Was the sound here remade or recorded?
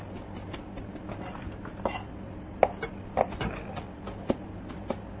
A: recorded